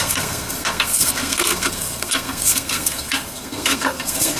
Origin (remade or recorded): remade